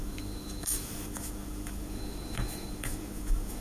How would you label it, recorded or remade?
remade